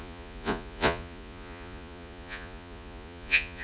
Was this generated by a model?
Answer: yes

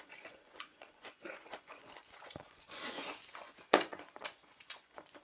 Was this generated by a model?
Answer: yes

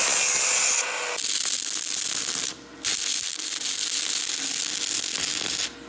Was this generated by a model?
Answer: no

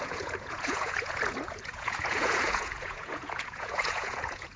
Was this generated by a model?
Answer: yes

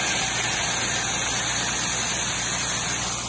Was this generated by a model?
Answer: no